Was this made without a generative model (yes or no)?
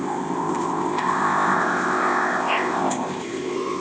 no